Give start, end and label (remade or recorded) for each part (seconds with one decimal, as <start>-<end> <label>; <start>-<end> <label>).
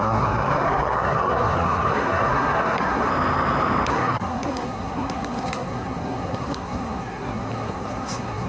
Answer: 0.0-3.1 remade; 3.1-3.9 recorded; 3.9-8.5 remade